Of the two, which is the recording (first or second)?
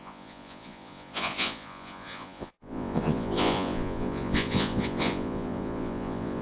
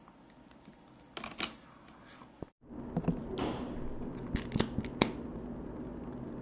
second